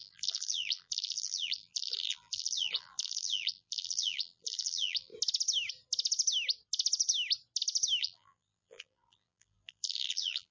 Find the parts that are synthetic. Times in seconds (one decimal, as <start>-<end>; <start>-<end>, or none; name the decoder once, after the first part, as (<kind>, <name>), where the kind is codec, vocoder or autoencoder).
0.0-5.1 (vocoder, BigVGAN v2); 8.0-10.5